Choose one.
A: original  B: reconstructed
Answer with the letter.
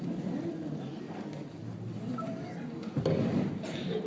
A